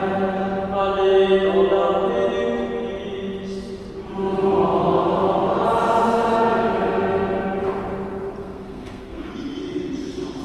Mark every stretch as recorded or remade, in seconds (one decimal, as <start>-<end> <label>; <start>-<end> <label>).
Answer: 0.0-8.4 recorded; 8.4-9.3 remade; 9.3-10.4 recorded

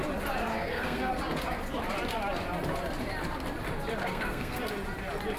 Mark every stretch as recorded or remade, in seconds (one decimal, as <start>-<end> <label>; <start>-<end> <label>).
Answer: 0.0-0.4 recorded; 0.4-1.1 remade; 1.1-4.0 recorded; 4.0-4.6 remade; 4.6-5.4 recorded

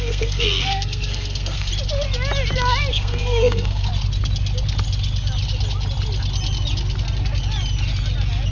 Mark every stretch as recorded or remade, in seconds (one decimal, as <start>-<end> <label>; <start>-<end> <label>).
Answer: 0.0-1.7 remade; 1.7-2.9 recorded; 2.9-3.9 remade; 3.9-8.5 recorded